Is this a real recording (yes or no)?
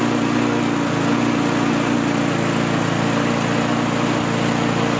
yes